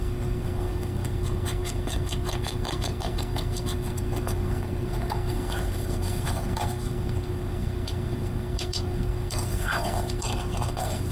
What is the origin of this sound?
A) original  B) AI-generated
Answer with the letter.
B